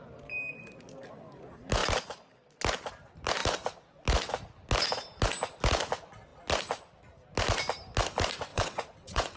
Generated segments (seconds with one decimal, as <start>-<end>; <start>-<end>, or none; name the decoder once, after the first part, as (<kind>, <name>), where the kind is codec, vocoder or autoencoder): 8.5-9.4 (vocoder, WaveNeXt)